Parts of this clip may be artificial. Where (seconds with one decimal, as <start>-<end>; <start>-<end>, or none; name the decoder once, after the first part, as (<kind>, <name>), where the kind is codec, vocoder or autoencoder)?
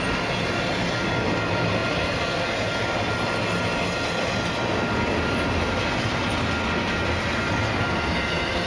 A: none